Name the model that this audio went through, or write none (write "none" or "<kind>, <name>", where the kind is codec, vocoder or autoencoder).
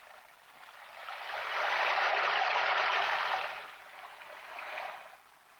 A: none